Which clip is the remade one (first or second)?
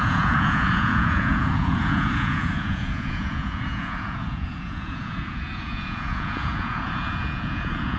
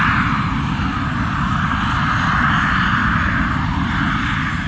first